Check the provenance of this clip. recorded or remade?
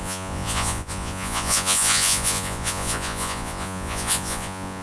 remade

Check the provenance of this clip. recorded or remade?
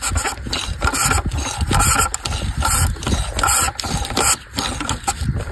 recorded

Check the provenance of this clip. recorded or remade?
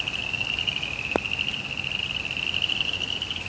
recorded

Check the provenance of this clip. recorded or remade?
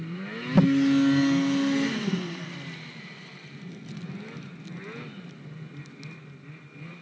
recorded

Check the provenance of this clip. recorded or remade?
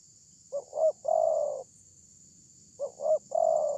recorded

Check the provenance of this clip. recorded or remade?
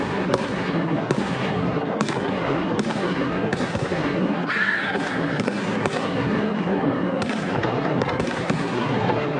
remade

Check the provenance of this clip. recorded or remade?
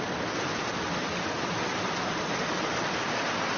recorded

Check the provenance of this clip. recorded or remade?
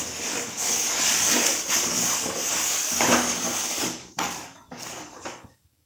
remade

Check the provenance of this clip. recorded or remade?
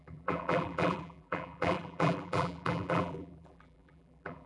remade